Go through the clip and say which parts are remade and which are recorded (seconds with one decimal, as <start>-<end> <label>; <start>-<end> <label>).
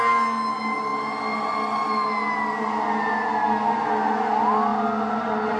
0.0-5.6 recorded